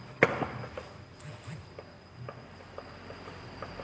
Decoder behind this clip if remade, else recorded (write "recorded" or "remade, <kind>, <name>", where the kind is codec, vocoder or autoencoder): recorded